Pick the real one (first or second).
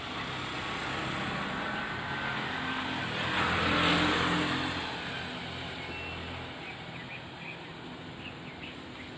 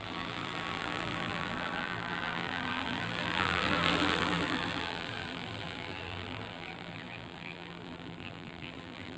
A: first